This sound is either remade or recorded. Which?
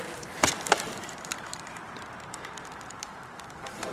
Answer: remade